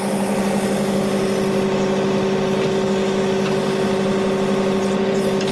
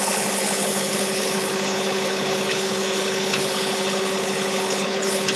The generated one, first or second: second